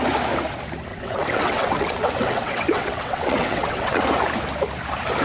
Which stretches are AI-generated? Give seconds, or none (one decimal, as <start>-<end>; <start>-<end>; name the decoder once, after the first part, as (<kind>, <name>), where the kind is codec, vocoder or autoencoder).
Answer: 0.9-4.0 (vocoder, WaveNeXt)